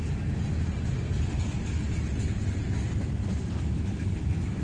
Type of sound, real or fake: real